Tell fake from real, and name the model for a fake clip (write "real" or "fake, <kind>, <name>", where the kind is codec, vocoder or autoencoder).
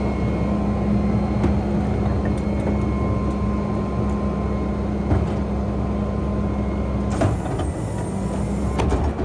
real